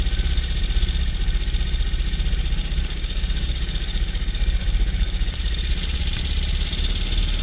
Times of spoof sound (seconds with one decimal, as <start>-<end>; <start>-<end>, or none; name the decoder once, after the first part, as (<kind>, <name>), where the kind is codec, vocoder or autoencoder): 2.6-5.4 (codec, DAC)